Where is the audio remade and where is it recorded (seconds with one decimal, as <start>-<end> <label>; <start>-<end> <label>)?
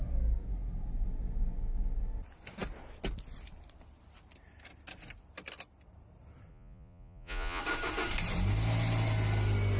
0.0-6.5 recorded; 6.5-7.6 remade; 7.6-9.8 recorded